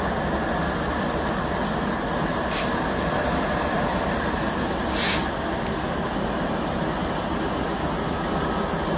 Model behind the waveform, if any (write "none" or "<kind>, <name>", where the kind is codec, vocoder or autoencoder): none